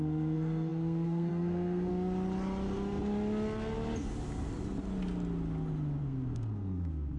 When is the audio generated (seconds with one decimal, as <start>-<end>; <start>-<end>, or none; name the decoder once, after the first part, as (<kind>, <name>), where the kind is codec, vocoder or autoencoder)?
0.0-1.9 (codec, SNAC); 6.0-7.2